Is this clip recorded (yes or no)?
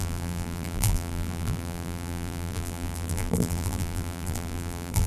no